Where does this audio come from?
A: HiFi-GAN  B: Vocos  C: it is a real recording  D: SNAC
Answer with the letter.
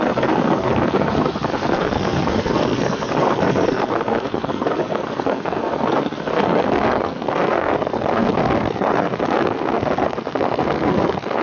D